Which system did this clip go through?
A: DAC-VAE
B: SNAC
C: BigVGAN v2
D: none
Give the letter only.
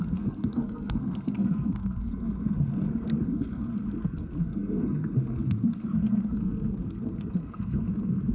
B